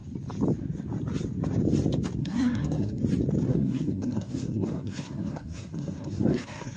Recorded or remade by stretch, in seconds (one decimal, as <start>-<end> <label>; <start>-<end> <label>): 0.0-2.2 recorded; 2.2-3.0 remade; 3.0-3.5 recorded; 3.5-6.8 remade